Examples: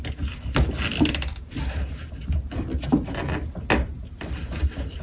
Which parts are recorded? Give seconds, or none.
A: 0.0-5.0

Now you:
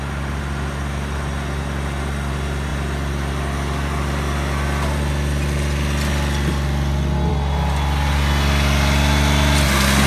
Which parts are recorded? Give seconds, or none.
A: 0.0-10.1

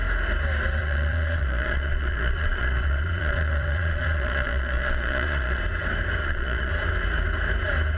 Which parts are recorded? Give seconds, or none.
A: 0.0-0.8; 5.6-6.2; 6.7-8.0

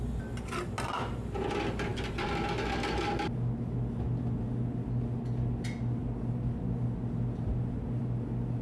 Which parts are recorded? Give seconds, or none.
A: 0.0-8.6

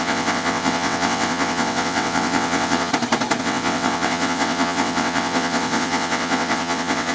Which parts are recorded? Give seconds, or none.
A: 2.9-3.4

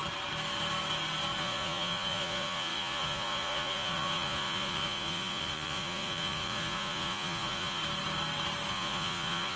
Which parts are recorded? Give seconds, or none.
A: 0.0-1.4; 7.8-8.7